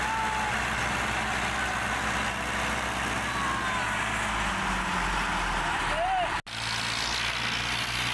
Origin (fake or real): real